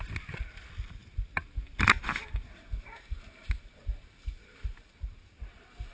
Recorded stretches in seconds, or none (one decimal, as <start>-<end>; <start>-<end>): 0.0-5.9